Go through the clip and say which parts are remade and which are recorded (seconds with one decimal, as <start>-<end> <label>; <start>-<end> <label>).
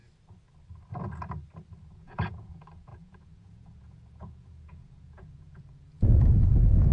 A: 0.0-1.9 recorded; 1.9-6.9 remade